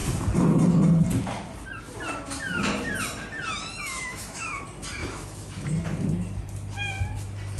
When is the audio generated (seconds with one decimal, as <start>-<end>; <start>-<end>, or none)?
3.8-4.6; 5.0-5.7

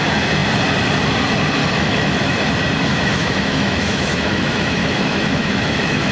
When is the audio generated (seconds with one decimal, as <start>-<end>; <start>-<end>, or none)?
1.6-2.5; 2.9-6.1

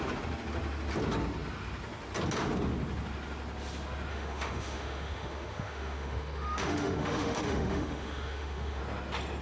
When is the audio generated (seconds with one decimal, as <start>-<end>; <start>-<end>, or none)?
4.1-8.8

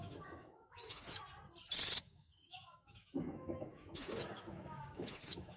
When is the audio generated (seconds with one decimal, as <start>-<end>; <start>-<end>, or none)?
0.0-1.2; 2.0-5.6